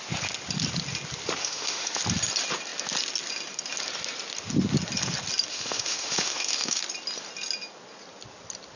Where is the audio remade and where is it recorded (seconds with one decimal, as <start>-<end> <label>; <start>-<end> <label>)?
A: 0.0-1.4 recorded; 1.4-2.0 remade; 2.0-5.5 recorded; 5.5-6.8 remade; 6.8-8.8 recorded